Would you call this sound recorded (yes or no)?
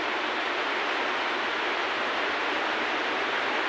yes